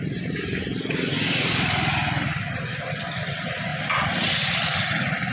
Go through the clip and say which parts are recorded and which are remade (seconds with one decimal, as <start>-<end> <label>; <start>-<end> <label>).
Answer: 0.0-2.6 recorded; 2.6-5.3 remade